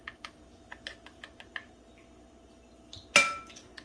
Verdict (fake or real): real